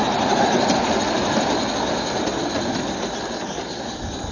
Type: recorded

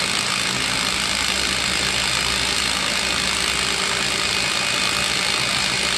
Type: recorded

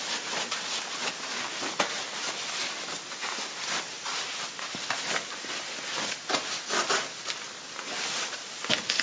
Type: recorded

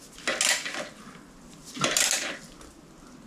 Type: recorded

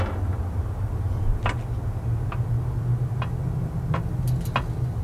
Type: recorded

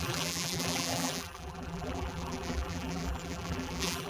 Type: remade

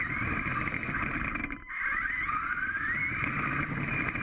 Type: remade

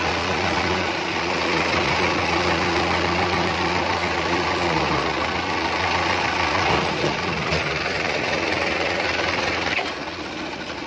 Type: remade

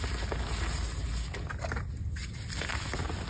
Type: recorded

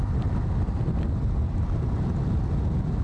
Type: recorded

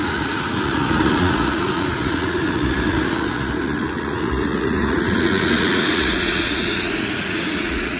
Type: remade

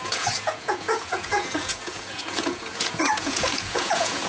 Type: remade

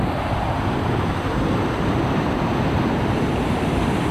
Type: remade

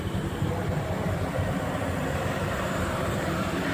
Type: remade